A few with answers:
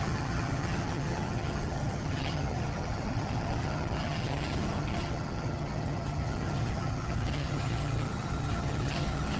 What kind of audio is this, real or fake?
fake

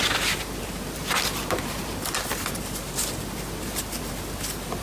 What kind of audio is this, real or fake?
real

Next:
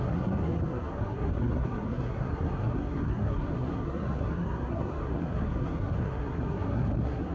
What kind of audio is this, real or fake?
fake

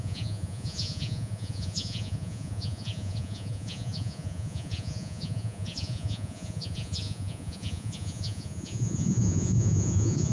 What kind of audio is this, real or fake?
fake